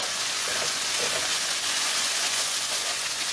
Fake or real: fake